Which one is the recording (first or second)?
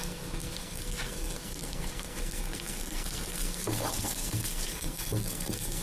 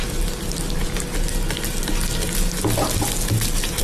second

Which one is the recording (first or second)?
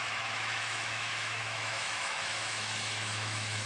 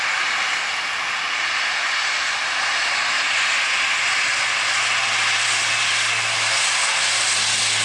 second